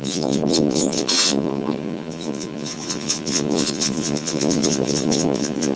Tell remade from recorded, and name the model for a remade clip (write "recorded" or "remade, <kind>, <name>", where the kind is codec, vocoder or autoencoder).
remade, vocoder, Vocos